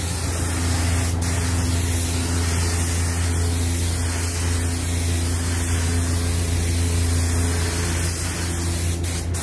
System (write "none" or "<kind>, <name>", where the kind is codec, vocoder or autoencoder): none